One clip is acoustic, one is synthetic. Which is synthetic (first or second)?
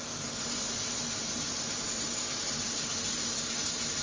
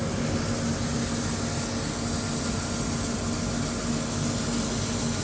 first